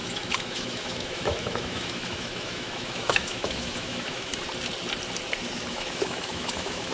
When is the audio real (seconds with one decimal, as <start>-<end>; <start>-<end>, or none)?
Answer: 4.3-5.7